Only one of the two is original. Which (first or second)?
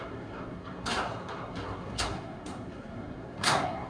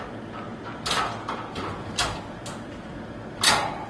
second